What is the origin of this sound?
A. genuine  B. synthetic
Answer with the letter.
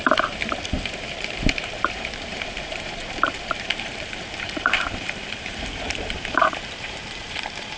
B